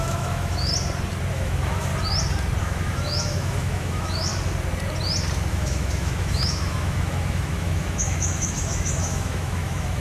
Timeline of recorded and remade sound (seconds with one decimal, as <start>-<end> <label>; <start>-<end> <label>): 0.0-0.7 remade; 0.7-1.3 recorded; 1.3-1.9 remade; 1.9-2.6 recorded; 2.6-4.3 remade; 4.3-5.5 recorded; 5.5-10.0 remade